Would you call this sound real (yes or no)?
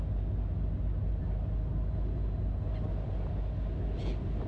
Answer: yes